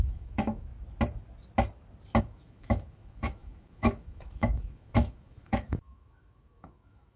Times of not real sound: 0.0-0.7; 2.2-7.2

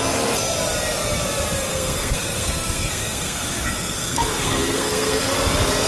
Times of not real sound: 1.7-5.2

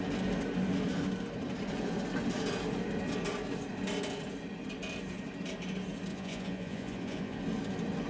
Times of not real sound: 6.1-7.4